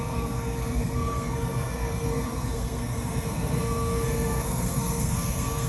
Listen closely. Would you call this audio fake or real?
fake